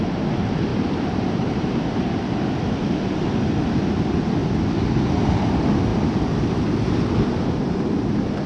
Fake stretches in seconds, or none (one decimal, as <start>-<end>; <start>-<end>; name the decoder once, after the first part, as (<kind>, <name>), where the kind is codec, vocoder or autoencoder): 0.7-2.0 (vocoder, BigVGAN v2); 5.9-7.0